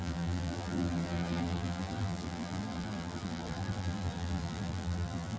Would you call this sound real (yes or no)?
no